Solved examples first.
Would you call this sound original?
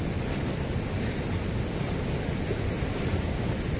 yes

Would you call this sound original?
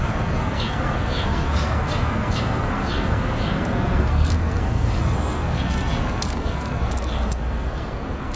no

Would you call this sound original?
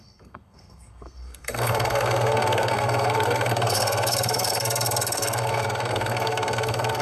no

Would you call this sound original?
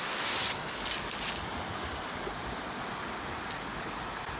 yes